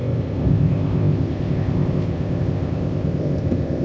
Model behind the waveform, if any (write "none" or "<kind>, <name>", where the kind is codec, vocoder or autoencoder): codec, ZipCodec